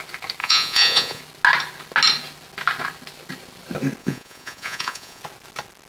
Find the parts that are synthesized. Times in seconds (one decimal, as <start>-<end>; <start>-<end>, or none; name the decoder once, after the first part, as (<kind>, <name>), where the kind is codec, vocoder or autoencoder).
0.4-1.2 (vocoder, Vocos); 4.0-5.2